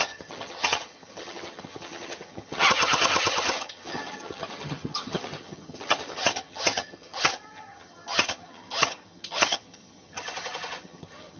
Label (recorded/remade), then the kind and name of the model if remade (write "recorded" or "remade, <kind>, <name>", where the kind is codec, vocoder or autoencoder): remade, vocoder, HiFi-GAN